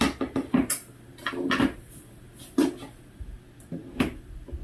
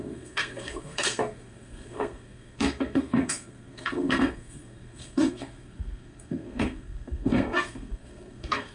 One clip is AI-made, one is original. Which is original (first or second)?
first